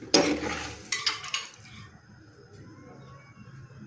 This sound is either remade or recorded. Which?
recorded